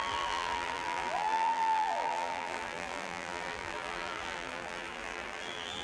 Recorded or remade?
remade